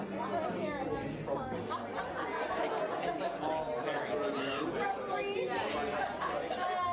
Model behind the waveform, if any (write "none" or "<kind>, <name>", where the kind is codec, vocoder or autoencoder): none